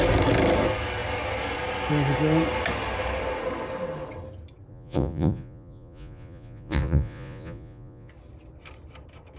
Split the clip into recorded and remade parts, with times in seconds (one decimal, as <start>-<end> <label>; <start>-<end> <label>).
0.0-4.7 recorded; 4.7-8.1 remade; 8.1-9.4 recorded

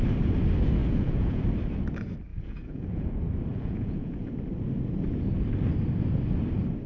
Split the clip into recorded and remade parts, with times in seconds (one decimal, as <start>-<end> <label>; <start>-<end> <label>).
0.0-0.8 recorded; 0.8-1.4 remade; 1.4-2.3 recorded; 2.3-3.1 remade; 3.1-3.5 recorded; 3.5-4.3 remade; 4.3-6.9 recorded

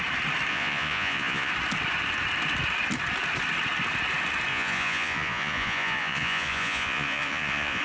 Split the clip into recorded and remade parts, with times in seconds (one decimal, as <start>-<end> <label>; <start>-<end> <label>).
0.0-0.5 recorded; 0.5-1.5 remade; 1.5-4.5 recorded; 4.5-7.8 remade

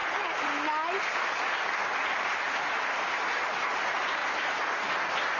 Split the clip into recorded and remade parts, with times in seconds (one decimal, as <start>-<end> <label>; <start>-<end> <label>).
0.0-5.4 recorded

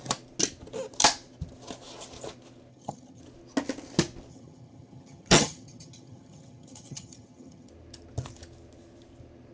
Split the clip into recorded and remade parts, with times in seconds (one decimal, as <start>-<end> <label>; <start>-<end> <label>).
0.0-2.7 recorded; 2.7-3.2 remade; 3.2-4.3 recorded; 4.3-7.7 remade; 7.7-9.5 recorded

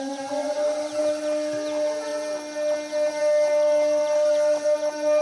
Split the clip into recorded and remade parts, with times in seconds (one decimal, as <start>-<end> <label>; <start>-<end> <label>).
0.0-5.2 recorded

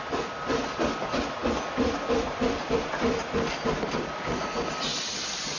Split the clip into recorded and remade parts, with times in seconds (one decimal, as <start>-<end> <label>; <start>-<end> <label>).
0.0-5.6 recorded

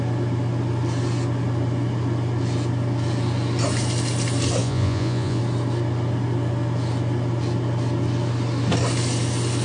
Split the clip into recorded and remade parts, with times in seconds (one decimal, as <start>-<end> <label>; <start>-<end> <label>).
0.0-4.6 recorded; 4.6-5.4 remade; 5.4-9.6 recorded